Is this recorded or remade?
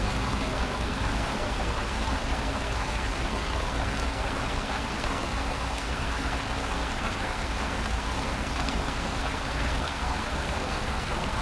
remade